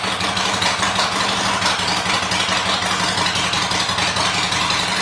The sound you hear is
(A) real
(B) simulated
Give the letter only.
A